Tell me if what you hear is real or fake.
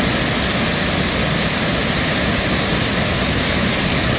real